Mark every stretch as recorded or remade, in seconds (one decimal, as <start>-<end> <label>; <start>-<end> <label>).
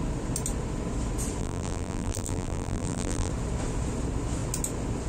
0.0-1.4 recorded; 1.4-3.3 remade; 3.3-5.1 recorded